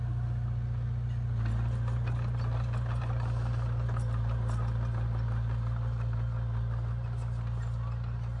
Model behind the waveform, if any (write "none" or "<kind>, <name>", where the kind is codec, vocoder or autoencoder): none